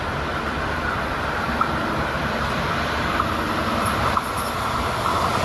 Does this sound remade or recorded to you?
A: remade